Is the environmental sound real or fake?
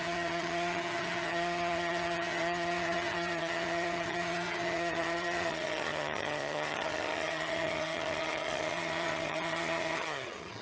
fake